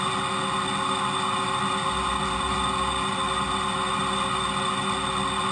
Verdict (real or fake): real